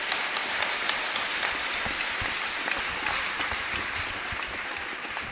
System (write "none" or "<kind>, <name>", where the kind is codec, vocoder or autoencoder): none